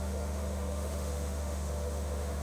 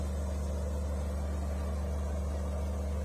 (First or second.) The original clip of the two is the second